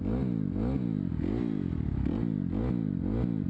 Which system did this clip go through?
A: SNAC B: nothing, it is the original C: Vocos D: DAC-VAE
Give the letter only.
B